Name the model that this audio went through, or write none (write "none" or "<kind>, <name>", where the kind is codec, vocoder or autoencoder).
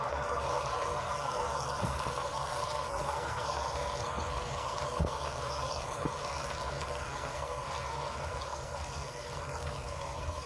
codec, SNAC